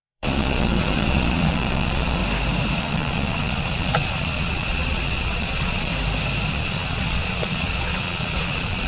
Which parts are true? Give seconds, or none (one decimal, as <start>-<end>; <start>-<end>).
2.2-2.8; 5.9-6.5